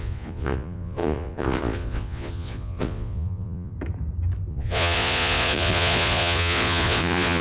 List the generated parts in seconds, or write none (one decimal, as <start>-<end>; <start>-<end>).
0.0-3.7; 4.5-7.4